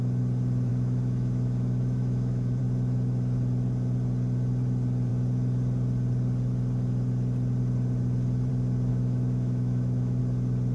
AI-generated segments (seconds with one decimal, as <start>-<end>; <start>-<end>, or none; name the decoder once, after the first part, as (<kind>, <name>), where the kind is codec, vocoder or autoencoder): 0.7-2.6 (autoencoder, DAC-VAE); 8.9-10.2